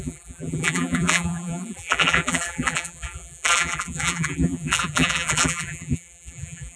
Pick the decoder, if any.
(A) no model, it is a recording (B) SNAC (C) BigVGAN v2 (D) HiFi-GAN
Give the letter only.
C